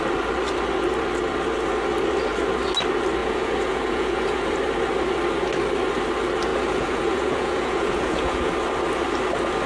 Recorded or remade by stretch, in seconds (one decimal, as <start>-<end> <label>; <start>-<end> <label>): 0.0-3.2 recorded; 3.2-4.5 remade; 4.5-6.5 recorded; 6.5-8.5 remade; 8.5-9.7 recorded